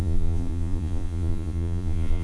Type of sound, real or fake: fake